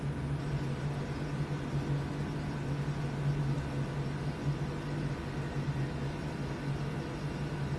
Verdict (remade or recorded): recorded